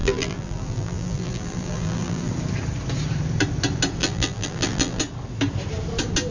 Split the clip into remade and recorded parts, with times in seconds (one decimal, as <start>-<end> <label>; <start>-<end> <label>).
0.0-2.3 remade; 2.3-4.0 recorded; 4.0-5.0 remade; 5.0-6.3 recorded